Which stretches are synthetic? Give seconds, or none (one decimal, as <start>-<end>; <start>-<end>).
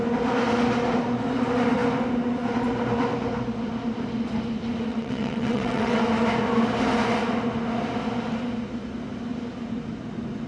4.9-6.0